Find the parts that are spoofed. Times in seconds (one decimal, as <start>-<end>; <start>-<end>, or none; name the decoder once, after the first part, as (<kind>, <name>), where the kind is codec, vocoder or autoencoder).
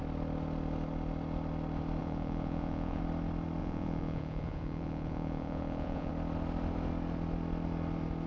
2.0-3.0 (vocoder, Vocos); 3.6-6.1